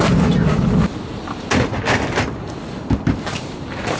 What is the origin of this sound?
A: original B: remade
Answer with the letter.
A